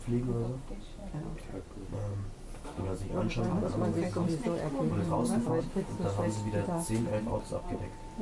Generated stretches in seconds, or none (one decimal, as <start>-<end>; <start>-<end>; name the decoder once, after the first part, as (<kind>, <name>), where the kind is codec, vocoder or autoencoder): none